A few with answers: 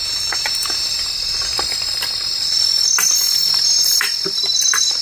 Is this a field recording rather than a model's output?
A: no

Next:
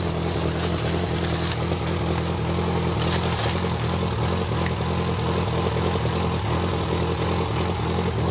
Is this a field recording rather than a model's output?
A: yes